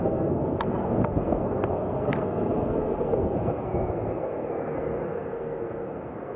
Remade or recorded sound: remade